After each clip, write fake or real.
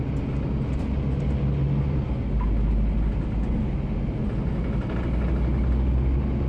real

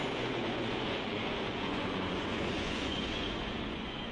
fake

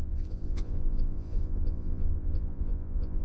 fake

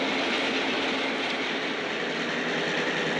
real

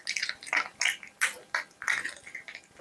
real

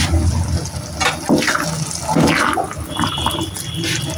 real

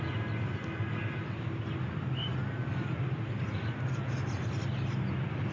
real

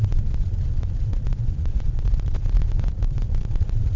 fake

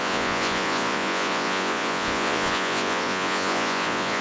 fake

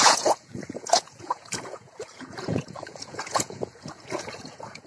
fake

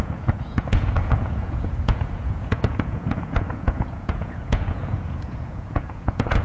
fake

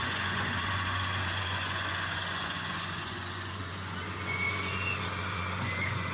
fake